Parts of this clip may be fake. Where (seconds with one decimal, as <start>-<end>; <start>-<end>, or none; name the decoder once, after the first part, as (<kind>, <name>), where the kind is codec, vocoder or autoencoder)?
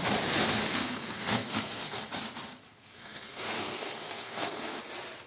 0.7-2.0 (codec, SNAC); 2.7-4.8